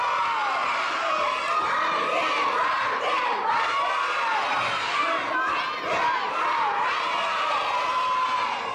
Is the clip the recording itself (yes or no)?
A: yes